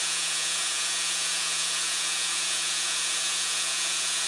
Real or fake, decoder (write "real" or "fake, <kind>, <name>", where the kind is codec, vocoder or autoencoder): fake, vocoder, Vocos